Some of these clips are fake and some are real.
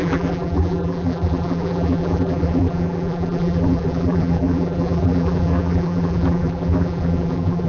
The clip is fake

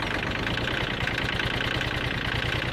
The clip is real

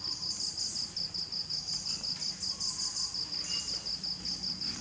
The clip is real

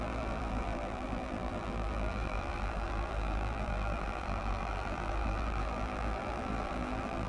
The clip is fake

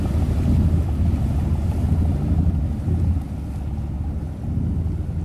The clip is real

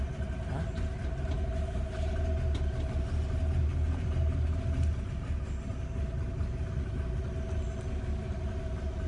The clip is real